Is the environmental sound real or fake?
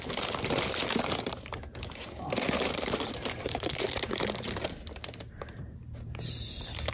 fake